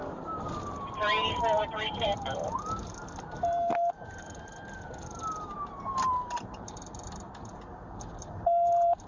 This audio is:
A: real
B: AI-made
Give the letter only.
B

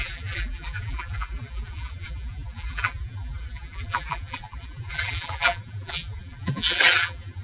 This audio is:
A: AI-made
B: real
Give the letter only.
A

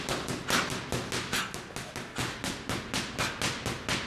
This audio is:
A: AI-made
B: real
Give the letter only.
B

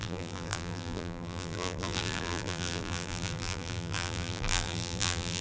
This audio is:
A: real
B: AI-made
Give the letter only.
B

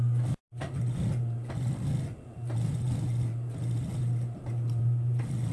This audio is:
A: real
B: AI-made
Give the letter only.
A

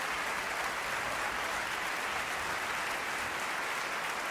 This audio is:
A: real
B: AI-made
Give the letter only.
A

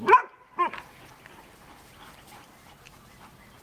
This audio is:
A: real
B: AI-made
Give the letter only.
A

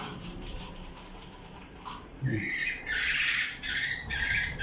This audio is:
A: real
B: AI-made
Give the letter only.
B